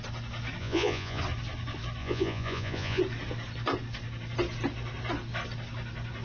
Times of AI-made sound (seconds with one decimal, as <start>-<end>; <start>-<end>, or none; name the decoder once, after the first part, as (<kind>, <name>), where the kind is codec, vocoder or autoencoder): 0.6-1.2 (vocoder, Vocos); 2.0-3.0